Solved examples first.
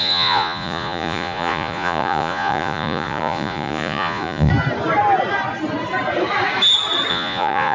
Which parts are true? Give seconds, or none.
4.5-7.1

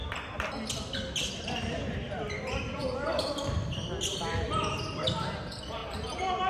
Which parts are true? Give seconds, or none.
0.0-1.4; 5.8-6.5

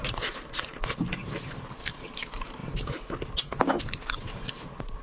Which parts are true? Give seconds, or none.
2.6-3.8

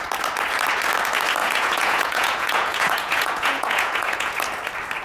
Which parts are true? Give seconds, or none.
0.0-1.4; 4.4-5.0